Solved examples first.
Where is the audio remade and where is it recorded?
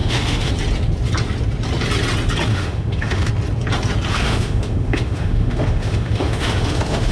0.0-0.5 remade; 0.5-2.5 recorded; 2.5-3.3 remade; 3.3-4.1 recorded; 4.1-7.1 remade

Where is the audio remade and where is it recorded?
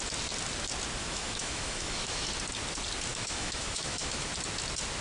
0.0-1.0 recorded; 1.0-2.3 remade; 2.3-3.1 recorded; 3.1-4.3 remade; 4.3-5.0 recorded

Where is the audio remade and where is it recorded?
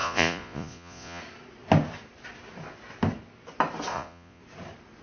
0.0-1.2 remade; 1.2-3.9 recorded; 3.9-4.4 remade; 4.4-5.0 recorded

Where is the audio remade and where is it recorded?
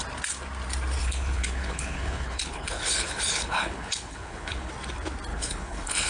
0.0-1.0 recorded; 1.0-4.7 remade; 4.7-5.3 recorded; 5.3-6.1 remade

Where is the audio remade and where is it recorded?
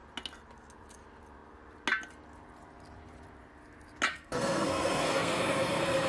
0.0-4.1 recorded; 4.1-6.1 remade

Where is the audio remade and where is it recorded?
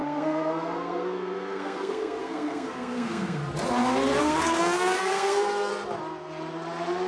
0.0-3.4 remade; 3.4-4.2 recorded; 4.2-5.7 remade; 5.7-7.1 recorded